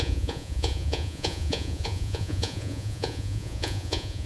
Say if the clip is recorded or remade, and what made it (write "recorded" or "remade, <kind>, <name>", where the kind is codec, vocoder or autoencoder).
remade, vocoder, Vocos